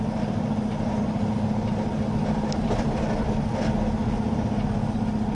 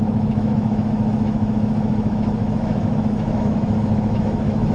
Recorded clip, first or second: first